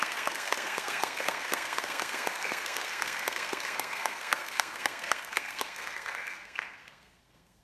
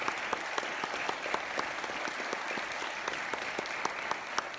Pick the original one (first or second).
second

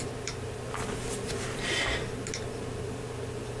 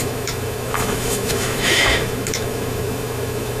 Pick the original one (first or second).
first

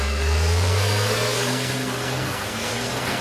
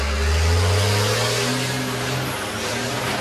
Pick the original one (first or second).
second